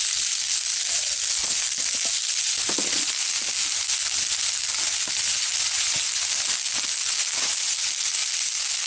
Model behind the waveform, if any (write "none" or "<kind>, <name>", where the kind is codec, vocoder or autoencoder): none